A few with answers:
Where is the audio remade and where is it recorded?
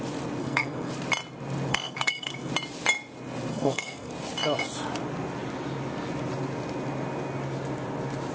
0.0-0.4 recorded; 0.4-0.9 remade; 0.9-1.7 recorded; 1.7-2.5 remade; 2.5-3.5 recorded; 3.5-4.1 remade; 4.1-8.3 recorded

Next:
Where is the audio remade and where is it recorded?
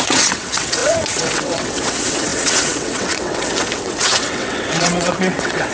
0.0-5.7 remade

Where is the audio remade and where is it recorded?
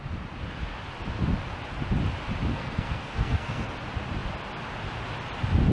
0.0-2.5 recorded; 2.5-3.7 remade; 3.7-5.7 recorded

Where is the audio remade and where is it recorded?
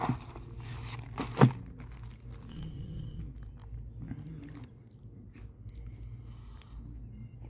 0.0-2.5 recorded; 2.5-3.2 remade; 3.2-7.5 recorded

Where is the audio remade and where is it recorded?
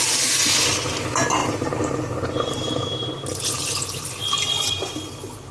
0.0-1.4 recorded; 1.4-3.1 remade; 3.1-5.5 recorded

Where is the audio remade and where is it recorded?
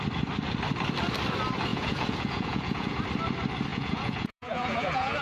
0.0-1.7 recorded; 1.7-3.0 remade; 3.0-3.7 recorded; 3.7-5.2 remade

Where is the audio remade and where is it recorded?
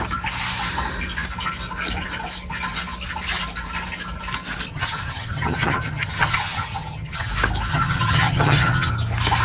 0.0-4.7 recorded; 4.7-7.3 remade; 7.3-7.7 recorded; 7.7-8.9 remade; 8.9-9.4 recorded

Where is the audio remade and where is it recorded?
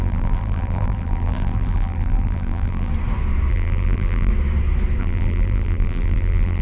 0.0-2.9 remade; 2.9-3.5 recorded; 3.5-4.3 remade; 4.3-5.0 recorded; 5.0-6.6 remade